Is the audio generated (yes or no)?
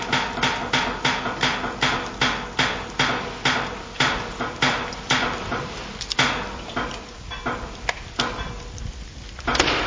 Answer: no